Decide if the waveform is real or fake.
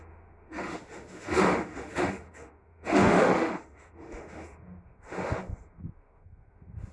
fake